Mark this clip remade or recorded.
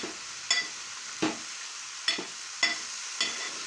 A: recorded